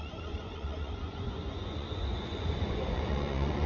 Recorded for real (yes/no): no